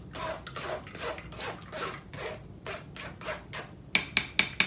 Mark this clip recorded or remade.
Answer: recorded